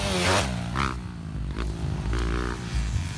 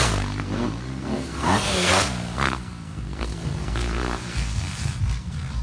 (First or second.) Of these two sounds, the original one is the first